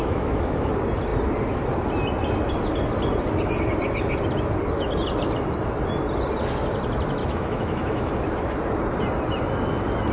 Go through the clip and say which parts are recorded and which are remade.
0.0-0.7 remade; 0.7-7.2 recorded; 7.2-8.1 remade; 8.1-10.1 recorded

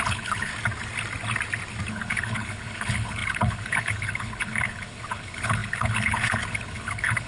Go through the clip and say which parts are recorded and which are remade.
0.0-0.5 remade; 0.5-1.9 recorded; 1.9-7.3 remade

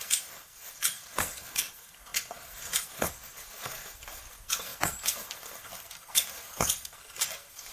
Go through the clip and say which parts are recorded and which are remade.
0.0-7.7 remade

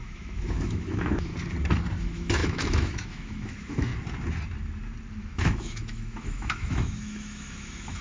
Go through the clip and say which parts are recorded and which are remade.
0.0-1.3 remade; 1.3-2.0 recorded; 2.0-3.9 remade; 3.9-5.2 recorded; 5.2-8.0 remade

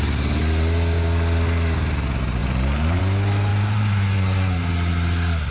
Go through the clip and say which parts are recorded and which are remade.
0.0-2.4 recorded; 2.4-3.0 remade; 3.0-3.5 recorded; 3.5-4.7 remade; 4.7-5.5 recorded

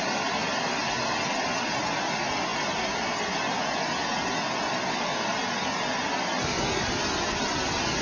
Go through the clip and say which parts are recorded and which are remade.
0.0-8.0 recorded